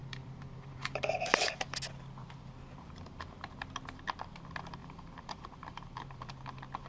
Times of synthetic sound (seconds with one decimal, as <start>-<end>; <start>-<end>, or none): 0.0-1.5; 2.2-3.5; 4.8-6.3